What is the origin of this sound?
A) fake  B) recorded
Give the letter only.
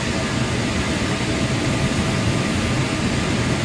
B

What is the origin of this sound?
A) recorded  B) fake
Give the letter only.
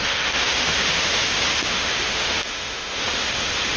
B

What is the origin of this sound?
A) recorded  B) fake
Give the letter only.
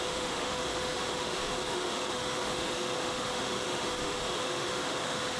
B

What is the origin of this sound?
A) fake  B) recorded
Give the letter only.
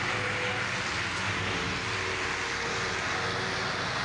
B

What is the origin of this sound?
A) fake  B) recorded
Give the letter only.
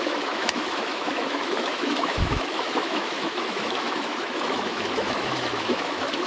A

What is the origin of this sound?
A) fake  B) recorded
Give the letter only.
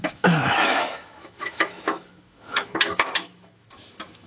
A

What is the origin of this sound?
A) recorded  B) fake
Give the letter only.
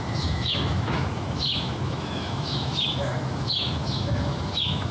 B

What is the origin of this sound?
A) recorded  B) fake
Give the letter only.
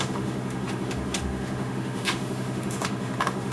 B